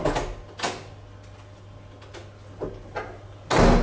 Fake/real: real